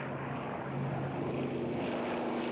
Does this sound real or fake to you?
real